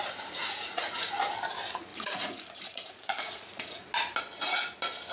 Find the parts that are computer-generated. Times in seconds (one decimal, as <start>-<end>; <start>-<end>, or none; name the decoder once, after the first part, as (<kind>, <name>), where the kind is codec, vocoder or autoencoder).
0.4-1.2 (vocoder, Vocos); 1.9-3.9